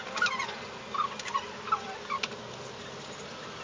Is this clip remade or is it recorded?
recorded